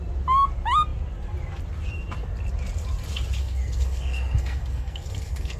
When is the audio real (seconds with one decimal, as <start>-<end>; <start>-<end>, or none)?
0.0-3.4